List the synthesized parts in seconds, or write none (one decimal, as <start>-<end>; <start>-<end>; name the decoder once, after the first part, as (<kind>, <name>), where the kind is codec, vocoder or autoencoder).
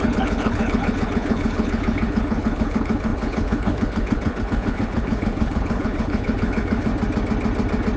0.0-6.9 (codec, HILCodec)